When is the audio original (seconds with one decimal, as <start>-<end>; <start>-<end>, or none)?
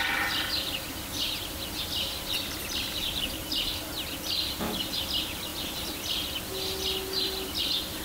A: 0.0-8.0